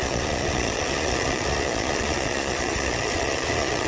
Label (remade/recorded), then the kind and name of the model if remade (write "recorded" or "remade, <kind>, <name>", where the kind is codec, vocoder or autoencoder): remade, vocoder, Vocos